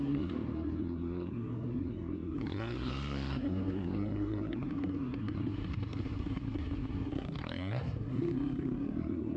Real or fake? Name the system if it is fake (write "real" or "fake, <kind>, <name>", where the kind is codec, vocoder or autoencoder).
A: fake, codec, SNAC